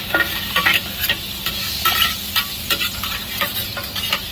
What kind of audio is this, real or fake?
real